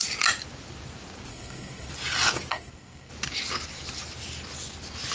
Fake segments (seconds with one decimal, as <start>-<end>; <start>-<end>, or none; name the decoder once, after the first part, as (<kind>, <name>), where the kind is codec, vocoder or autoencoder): 1.3-1.9 (codec, SNAC); 2.5-3.1